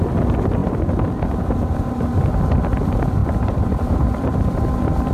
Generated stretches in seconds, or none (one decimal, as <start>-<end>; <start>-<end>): 3.2-4.4